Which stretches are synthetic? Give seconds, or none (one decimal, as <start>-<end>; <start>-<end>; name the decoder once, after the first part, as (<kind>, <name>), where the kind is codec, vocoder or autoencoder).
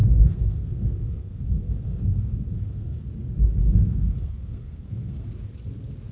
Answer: 0.0-3.0 (codec, SNAC); 3.6-5.3